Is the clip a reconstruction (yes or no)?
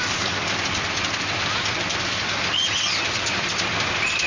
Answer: no